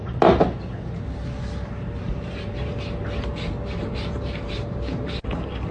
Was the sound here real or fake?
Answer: real